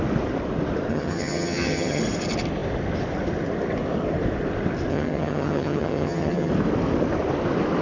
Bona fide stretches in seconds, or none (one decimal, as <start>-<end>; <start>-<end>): 0.0-0.9; 2.0-4.9; 6.5-7.8